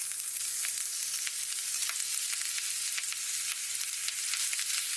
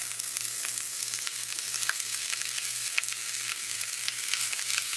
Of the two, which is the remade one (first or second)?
second